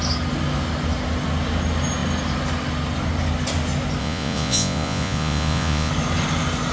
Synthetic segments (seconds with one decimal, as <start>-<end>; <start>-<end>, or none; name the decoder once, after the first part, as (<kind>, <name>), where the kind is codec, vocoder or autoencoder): 4.0-5.9 (vocoder, Vocos)